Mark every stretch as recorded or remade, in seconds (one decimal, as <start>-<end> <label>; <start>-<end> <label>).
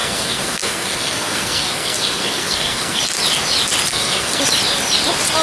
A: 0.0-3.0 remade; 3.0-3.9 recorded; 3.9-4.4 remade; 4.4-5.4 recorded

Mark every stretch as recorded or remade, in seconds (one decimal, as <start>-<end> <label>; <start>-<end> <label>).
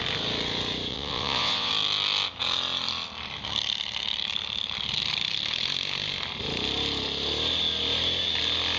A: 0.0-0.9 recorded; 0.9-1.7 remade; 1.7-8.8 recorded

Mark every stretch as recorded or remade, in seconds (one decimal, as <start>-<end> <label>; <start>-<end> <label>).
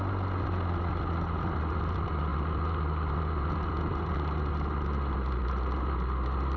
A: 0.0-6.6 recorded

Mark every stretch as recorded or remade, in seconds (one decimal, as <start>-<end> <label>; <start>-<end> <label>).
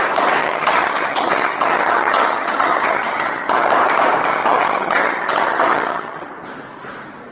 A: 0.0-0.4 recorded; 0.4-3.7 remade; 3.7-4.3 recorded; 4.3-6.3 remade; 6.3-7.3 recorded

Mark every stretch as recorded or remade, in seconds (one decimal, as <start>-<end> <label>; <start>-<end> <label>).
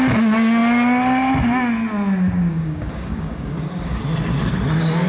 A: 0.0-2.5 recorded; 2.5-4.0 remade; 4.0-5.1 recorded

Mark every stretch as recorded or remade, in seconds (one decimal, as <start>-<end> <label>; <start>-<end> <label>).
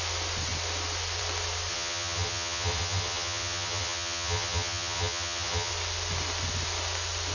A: 0.0-1.7 recorded; 1.7-5.7 remade; 5.7-7.3 recorded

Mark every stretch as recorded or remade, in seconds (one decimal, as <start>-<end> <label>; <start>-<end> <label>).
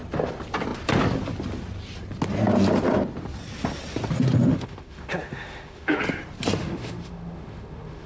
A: 0.0-4.5 recorded; 4.5-6.0 remade; 6.0-6.6 recorded; 6.6-8.1 remade